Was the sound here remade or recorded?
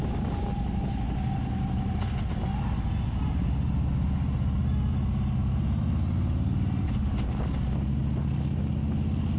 recorded